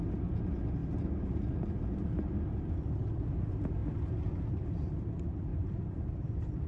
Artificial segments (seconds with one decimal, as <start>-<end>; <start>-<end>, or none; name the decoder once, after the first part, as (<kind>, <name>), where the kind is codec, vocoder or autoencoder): 0.8-2.1 (vocoder, BigVGAN v2); 5.5-6.7